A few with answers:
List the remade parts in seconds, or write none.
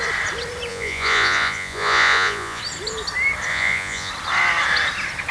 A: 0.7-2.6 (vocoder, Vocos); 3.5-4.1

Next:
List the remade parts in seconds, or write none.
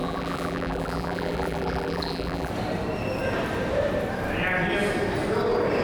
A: 0.0-2.5 (vocoder, BigVGAN v2)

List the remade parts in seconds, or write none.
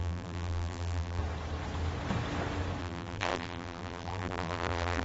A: 0.0-1.2 (vocoder, BigVGAN v2); 2.8-5.0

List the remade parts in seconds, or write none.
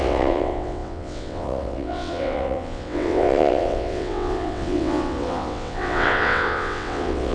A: 0.0-7.3 (vocoder, WaveNeXt)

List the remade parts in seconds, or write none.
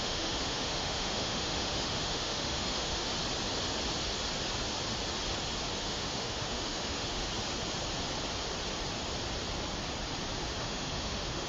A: 0.0-3.1 (autoencoder, DAC-VAE); 5.8-7.3; 10.6-11.5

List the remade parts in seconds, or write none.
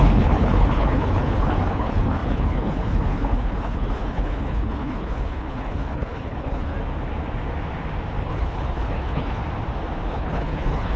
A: 0.0-6.7 (codec, HILCodec); 8.2-9.4; 10.1-11.0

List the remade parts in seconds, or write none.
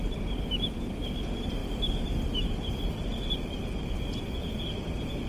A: 0.0-0.9 (vocoder, BigVGAN v2)